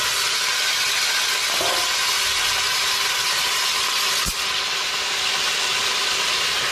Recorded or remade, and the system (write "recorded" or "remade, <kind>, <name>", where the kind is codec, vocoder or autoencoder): recorded